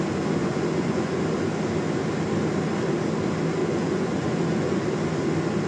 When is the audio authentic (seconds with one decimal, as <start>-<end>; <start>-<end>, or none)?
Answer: 0.0-0.4; 1.2-3.6; 4.8-5.7